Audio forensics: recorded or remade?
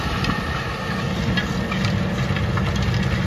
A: recorded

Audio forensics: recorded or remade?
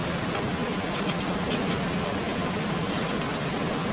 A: recorded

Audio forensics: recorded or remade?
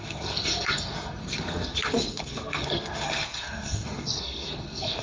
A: remade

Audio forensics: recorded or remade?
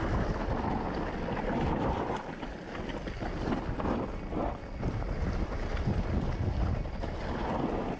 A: recorded